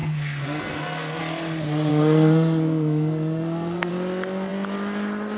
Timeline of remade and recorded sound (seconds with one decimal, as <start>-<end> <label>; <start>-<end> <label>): 0.0-1.2 remade; 1.2-1.9 recorded; 1.9-3.9 remade; 3.9-5.4 recorded